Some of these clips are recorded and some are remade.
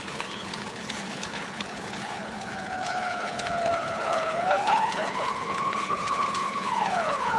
remade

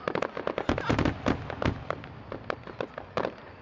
recorded